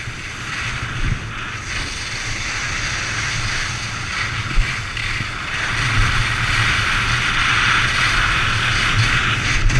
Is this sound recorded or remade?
recorded